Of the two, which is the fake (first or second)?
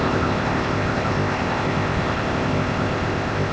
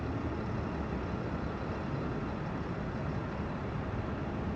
first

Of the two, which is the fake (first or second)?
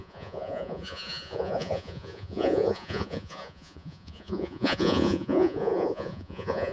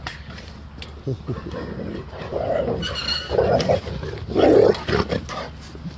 first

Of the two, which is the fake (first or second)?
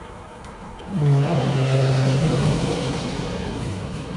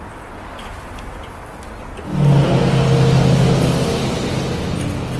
first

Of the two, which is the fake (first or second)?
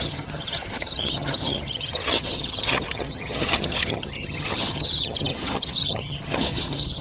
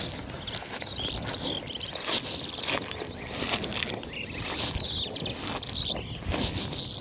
first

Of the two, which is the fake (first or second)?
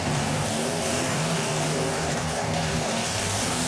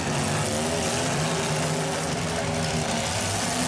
first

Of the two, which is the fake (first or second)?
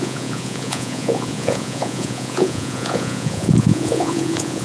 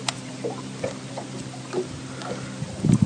first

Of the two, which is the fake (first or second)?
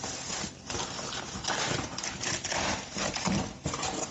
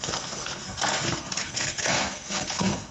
second